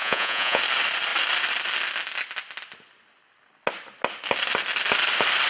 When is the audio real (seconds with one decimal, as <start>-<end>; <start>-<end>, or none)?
0.6-5.5